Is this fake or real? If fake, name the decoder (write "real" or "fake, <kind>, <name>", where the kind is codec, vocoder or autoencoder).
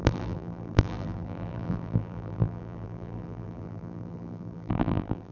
fake, vocoder, BigVGAN v2